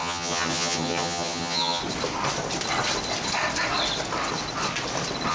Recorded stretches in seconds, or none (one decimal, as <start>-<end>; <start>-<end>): 1.8-5.3